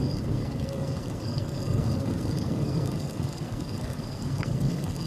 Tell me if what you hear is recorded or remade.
remade